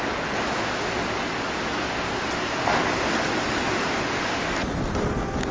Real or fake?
real